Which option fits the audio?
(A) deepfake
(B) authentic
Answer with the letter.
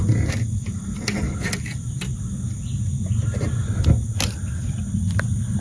B